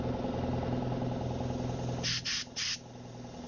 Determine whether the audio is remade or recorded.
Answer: recorded